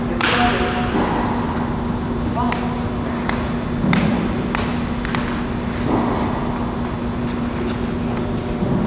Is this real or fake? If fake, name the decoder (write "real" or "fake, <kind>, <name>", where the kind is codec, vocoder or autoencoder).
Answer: real